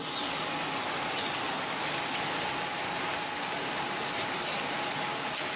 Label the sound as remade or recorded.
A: recorded